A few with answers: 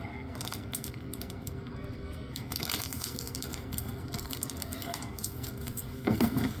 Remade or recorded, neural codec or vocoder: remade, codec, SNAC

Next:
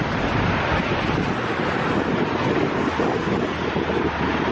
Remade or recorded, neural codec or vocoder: recorded